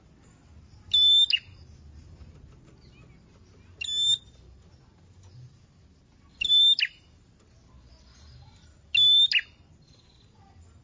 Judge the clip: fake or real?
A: real